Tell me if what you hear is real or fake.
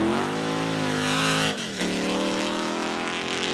fake